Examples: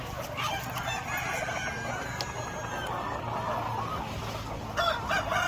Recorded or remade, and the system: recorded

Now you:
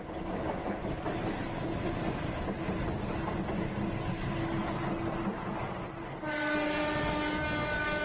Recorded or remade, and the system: recorded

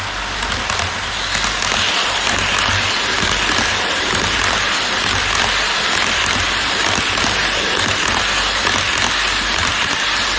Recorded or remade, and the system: recorded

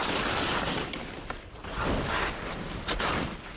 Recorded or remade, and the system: recorded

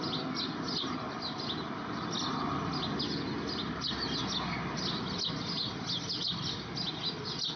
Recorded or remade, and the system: recorded